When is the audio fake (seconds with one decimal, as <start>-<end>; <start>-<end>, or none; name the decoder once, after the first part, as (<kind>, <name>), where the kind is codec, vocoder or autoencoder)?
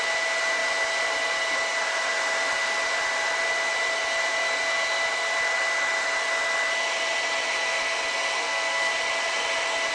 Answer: 8.4-8.9 (codec, SNAC)